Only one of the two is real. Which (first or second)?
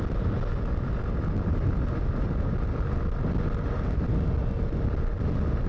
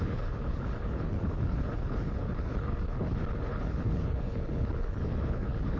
first